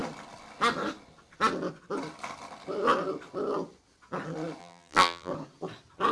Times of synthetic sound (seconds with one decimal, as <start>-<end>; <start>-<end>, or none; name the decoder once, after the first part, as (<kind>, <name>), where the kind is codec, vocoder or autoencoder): 4.6-5.3 (vocoder, BigVGAN v2)